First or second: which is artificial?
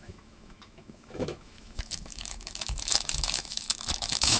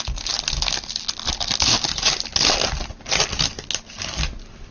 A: first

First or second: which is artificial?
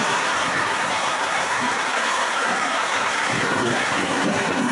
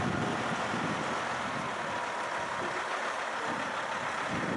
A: first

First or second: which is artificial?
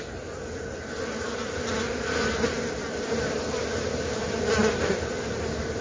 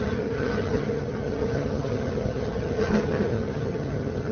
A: second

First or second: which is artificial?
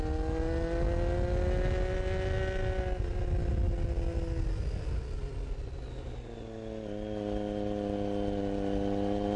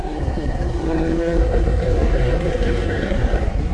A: second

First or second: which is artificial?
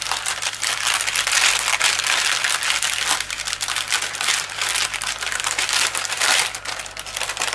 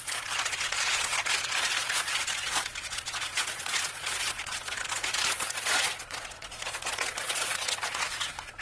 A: second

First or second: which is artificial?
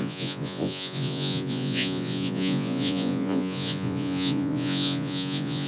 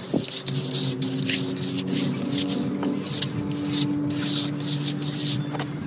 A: first